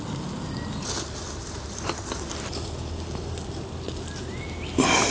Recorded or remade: recorded